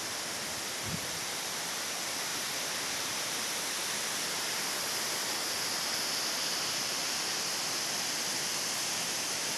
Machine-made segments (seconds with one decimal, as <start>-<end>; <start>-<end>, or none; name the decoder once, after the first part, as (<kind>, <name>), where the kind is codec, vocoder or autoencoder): 2.3-3.6 (vocoder, BigVGAN v2); 6.5-7.6